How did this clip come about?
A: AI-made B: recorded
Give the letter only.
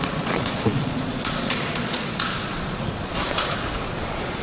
A